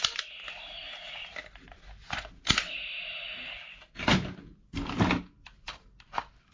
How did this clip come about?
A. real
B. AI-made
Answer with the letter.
A